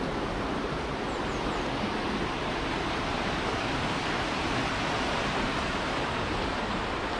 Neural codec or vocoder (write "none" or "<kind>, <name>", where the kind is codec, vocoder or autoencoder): vocoder, BigVGAN v2